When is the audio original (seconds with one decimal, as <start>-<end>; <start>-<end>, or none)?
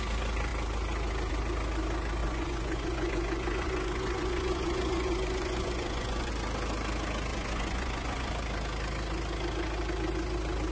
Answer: 0.0-2.2; 6.3-7.3; 8.3-10.7